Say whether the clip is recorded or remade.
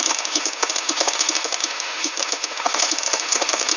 remade